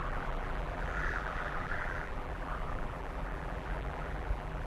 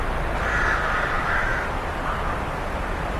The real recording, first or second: second